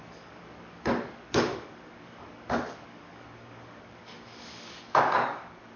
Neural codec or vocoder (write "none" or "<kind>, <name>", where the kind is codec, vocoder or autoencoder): codec, DAC